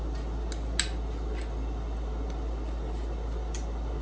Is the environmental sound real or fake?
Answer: real